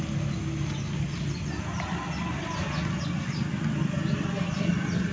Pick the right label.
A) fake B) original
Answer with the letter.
B